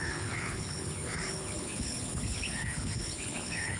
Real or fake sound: fake